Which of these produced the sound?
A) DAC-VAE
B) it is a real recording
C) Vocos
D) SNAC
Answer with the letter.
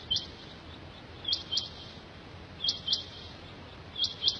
B